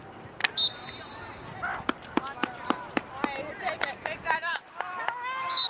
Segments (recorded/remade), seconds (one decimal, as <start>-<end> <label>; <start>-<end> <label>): 0.0-5.7 recorded